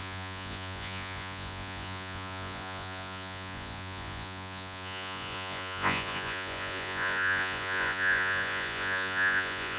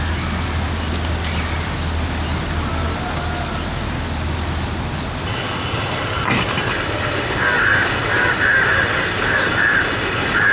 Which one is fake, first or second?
first